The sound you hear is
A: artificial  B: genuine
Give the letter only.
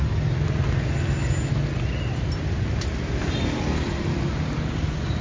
B